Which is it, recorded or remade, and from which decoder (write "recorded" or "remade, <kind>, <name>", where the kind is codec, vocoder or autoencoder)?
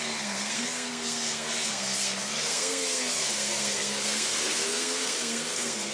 remade, codec, SNAC